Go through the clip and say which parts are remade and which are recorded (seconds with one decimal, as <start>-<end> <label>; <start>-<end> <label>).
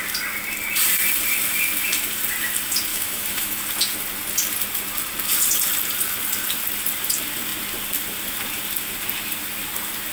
0.0-2.9 recorded; 2.9-3.6 remade; 3.6-10.1 recorded